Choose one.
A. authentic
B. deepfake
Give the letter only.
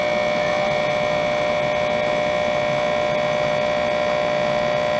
A